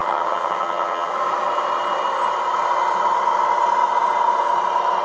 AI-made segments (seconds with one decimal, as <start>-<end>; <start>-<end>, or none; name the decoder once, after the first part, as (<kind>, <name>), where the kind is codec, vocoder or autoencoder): 0.0-1.1 (vocoder, HiFi-GAN)